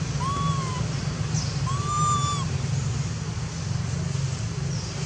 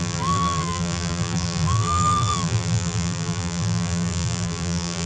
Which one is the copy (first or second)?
second